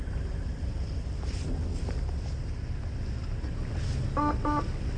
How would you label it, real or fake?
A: real